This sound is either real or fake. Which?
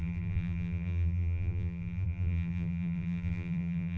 fake